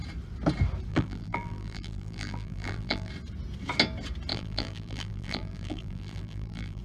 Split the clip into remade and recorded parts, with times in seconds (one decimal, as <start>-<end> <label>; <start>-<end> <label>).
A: 0.0-0.9 recorded; 0.9-3.1 remade; 3.1-4.3 recorded; 4.3-6.8 remade

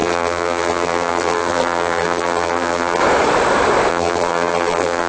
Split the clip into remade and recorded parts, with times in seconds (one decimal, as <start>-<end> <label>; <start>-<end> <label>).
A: 0.0-3.0 remade; 3.0-3.9 recorded; 3.9-5.1 remade

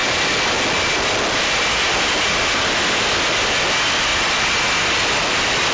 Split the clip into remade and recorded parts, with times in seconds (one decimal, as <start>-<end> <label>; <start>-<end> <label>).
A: 0.0-5.7 recorded

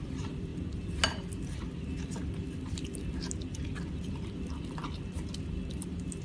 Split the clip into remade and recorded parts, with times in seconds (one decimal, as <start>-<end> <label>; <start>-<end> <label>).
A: 0.0-0.5 remade; 0.5-4.1 recorded; 4.1-4.8 remade; 4.8-5.4 recorded; 5.4-6.2 remade

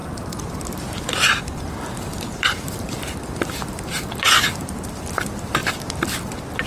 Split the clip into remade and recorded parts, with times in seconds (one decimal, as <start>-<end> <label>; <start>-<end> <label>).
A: 0.0-5.6 remade; 5.6-6.7 recorded